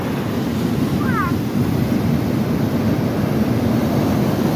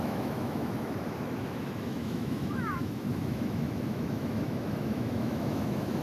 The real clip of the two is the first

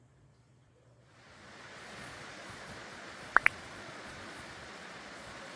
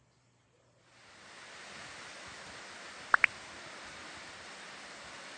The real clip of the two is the second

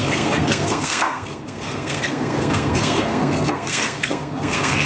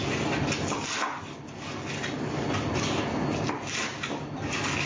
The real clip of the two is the second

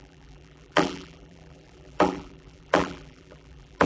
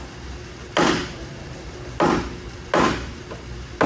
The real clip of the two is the second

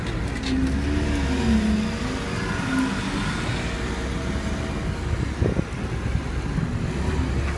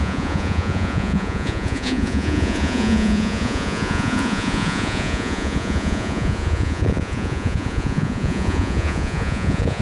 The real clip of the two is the first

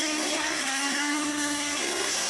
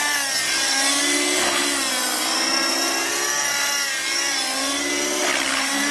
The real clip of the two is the second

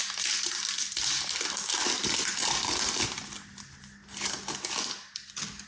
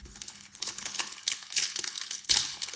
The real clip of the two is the first